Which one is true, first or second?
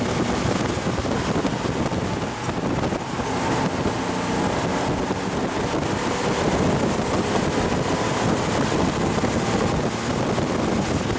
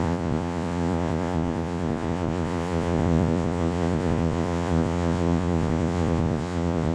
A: first